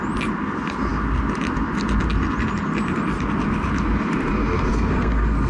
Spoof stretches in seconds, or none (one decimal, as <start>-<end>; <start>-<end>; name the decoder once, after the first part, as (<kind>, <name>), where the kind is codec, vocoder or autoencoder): 4.7-5.5 (codec, SNAC)